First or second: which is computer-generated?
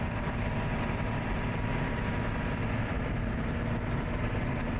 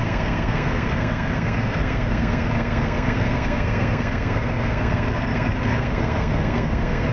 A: second